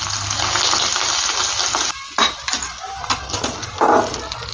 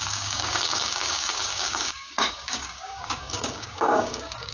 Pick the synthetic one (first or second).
second